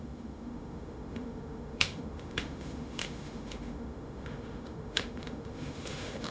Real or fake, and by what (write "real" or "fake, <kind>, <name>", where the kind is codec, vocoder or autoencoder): fake, autoencoder, DAC-VAE